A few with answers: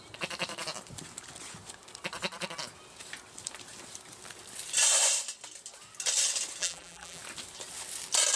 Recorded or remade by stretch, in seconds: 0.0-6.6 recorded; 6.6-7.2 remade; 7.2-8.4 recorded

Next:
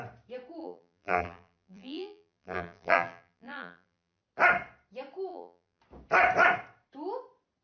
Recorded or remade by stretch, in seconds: 0.0-0.6 recorded; 0.6-4.2 remade; 4.2-5.3 recorded; 5.3-5.8 remade; 5.8-7.6 recorded

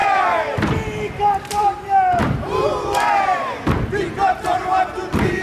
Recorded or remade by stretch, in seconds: 0.0-4.5 recorded; 4.5-5.0 remade; 5.0-5.4 recorded